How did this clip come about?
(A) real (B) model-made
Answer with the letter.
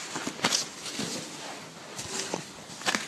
A